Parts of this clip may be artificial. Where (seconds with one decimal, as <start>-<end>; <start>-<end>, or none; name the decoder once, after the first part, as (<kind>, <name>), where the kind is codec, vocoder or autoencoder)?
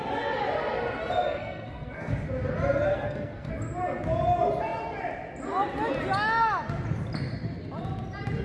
1.0-2.1 (codec, SNAC); 2.9-3.5